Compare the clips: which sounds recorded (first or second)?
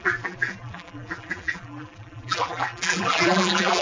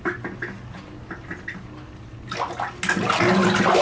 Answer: second